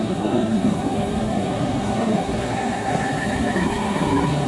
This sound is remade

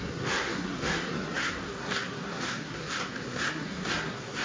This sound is remade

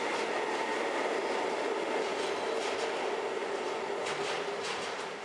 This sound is recorded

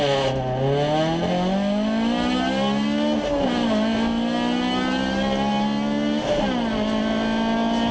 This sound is recorded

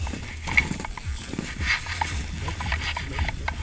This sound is recorded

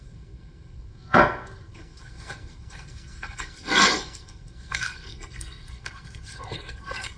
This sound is remade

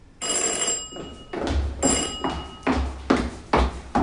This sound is recorded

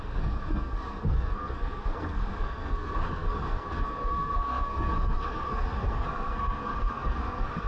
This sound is remade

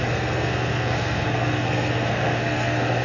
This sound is remade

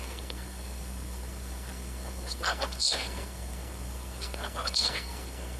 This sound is remade